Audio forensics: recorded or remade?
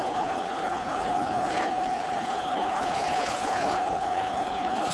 remade